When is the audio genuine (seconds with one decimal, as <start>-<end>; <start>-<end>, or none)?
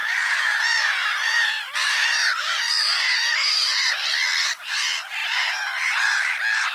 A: 3.9-5.2; 6.0-6.7